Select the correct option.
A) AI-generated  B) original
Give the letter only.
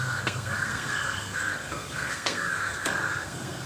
A